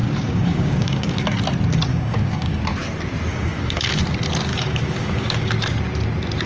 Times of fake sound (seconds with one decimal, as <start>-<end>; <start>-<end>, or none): 0.0-1.4; 1.9-2.6; 3.3-4.0; 4.5-5.5